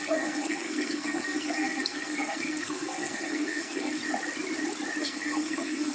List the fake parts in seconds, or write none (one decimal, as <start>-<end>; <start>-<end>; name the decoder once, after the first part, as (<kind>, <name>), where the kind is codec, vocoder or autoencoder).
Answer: 0.0-4.0 (codec, SNAC); 5.0-5.9